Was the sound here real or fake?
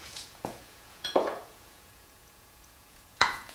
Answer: fake